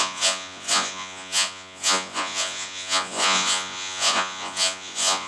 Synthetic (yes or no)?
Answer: yes